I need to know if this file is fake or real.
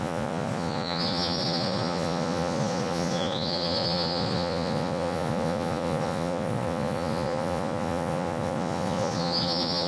fake